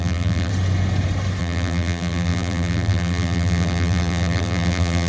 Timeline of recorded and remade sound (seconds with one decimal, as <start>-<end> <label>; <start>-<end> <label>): 0.0-0.5 remade; 0.5-1.4 recorded; 1.4-5.1 remade